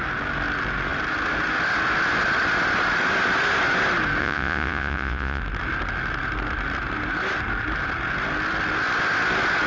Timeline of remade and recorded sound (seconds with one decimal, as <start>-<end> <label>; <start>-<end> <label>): 0.0-4.2 recorded; 4.2-5.4 remade; 5.4-9.7 recorded